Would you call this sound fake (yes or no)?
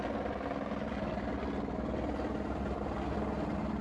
no